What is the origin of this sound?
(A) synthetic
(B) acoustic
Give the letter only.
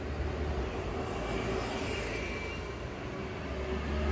B